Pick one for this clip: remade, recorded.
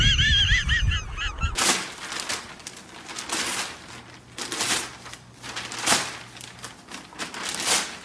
recorded